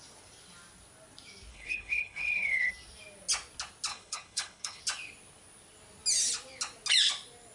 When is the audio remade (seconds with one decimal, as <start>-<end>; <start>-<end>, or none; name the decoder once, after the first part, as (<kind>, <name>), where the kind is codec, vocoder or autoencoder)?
1.5-2.7 (codec, HILCodec); 3.9-4.8